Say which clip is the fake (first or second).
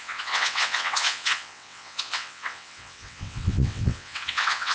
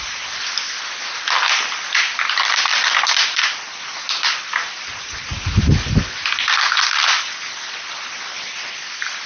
first